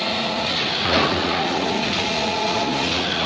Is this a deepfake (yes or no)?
yes